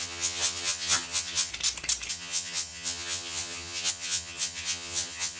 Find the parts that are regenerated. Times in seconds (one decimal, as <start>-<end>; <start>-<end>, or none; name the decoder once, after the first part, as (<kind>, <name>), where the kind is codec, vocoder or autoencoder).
0.0-1.5 (vocoder, HiFi-GAN); 2.1-5.4